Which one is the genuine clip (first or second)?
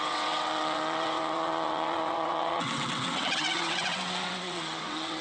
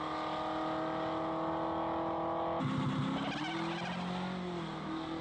second